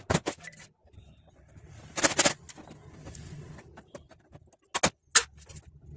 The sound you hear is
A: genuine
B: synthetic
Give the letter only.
A